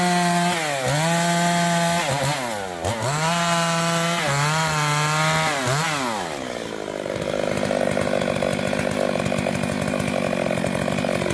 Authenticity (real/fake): real